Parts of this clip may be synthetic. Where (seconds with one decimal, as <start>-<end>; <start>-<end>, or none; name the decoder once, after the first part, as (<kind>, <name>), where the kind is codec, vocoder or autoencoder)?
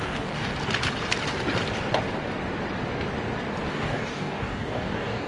0.0-0.5 (codec, DAC); 3.7-5.3